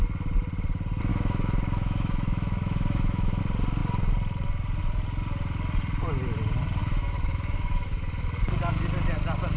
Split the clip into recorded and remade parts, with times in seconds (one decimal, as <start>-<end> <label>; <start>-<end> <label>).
0.0-1.1 recorded; 1.1-3.4 remade; 3.4-6.8 recorded; 6.8-8.7 remade; 8.7-9.6 recorded